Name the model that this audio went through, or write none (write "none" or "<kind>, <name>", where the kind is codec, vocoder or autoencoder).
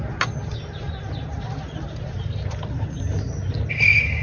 none